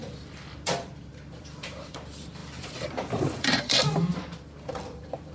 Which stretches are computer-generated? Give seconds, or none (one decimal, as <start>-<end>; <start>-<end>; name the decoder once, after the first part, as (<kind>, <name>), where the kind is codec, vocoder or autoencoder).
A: 0.0-5.3 (vocoder, BigVGAN v2)